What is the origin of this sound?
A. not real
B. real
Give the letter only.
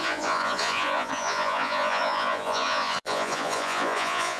A